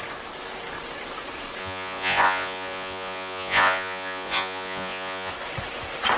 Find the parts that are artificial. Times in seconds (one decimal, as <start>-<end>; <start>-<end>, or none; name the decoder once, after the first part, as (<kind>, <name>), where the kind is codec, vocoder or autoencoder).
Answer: 1.6-5.3 (vocoder, Vocos)